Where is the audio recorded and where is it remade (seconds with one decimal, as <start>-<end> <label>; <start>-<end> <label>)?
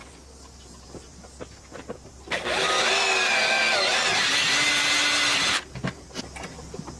0.0-7.0 recorded